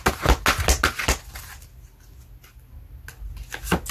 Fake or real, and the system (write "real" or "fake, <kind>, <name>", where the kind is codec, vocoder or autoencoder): real